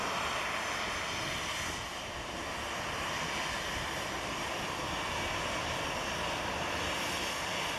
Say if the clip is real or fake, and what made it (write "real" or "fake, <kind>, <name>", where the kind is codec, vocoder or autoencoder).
real